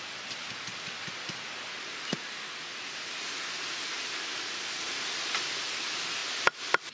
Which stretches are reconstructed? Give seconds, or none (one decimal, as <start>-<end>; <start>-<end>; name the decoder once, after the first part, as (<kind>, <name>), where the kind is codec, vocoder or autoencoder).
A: none